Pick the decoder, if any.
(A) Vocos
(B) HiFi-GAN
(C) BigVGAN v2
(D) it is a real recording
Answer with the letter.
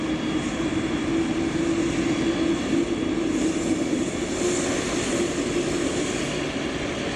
D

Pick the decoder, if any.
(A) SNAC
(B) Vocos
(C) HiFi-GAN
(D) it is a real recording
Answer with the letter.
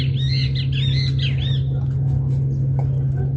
D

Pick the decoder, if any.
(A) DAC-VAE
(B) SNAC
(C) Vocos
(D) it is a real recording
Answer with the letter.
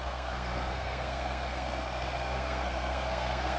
B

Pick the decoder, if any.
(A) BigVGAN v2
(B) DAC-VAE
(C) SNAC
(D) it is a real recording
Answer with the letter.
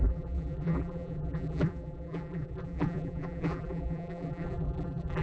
A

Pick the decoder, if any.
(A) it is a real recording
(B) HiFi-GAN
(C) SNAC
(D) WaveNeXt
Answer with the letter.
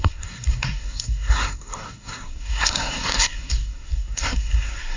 C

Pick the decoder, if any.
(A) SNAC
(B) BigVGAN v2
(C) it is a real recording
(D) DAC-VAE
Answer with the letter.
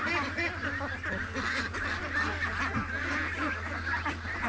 C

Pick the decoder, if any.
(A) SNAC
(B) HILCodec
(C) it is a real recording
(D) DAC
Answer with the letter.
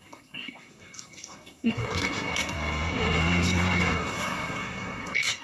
A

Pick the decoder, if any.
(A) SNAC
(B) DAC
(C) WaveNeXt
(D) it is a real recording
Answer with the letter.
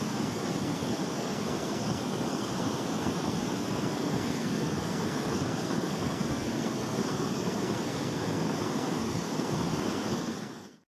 A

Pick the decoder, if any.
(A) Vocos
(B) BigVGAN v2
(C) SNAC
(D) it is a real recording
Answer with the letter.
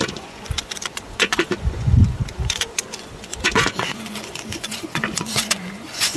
A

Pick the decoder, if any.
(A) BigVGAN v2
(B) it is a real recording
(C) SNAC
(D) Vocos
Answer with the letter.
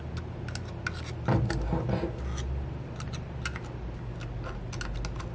B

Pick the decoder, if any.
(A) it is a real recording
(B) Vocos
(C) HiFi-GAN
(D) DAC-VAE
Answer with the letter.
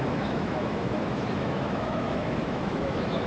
D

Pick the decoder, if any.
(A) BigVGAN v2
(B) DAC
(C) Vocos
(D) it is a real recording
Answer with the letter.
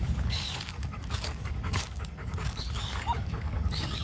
B